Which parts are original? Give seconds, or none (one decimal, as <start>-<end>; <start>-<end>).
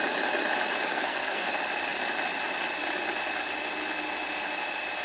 0.0-0.9; 1.5-5.0